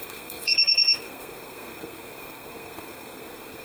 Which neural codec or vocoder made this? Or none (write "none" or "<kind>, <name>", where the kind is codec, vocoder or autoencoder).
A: codec, SNAC